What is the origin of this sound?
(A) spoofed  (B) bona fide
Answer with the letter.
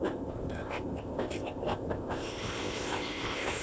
A